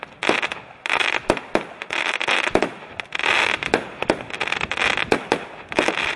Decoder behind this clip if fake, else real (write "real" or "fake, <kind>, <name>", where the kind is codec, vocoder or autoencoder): real